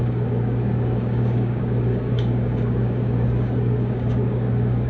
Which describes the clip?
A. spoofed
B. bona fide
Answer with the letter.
A